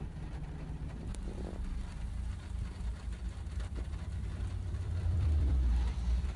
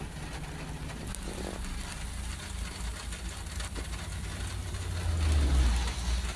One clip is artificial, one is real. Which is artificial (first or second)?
first